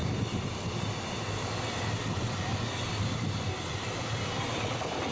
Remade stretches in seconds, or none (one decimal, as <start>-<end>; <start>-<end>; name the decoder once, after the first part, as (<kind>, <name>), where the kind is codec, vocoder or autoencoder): none